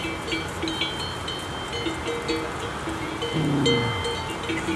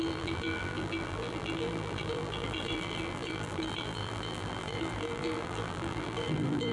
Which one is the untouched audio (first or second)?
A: first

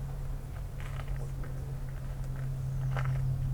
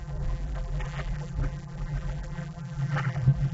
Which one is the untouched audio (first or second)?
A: first